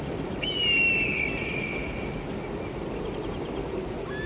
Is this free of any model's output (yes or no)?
yes